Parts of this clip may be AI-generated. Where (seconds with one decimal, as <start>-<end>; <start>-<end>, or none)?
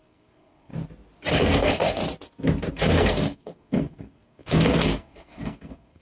0.0-0.7; 1.3-2.0; 2.7-6.0